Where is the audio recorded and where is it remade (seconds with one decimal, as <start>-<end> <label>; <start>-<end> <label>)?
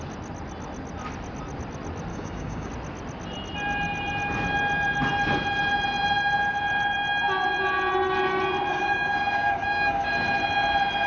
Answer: 0.0-2.1 recorded; 2.1-2.7 remade; 2.7-8.7 recorded; 8.7-10.1 remade; 10.1-11.1 recorded